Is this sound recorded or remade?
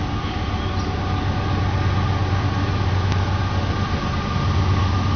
recorded